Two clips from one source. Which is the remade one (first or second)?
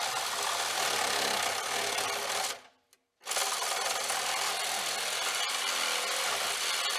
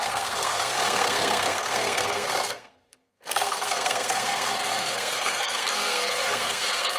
second